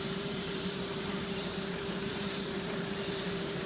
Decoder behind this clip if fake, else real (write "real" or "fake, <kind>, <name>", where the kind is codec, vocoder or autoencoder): fake, vocoder, BigVGAN v2